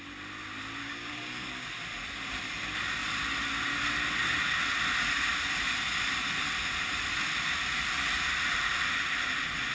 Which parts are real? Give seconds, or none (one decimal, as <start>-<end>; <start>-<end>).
0.0-0.8; 1.7-9.7